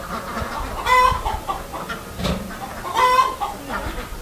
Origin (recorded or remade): recorded